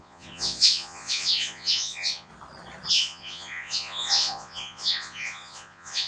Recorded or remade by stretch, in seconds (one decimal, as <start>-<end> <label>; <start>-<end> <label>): 0.0-2.3 remade; 2.3-2.9 recorded; 2.9-6.1 remade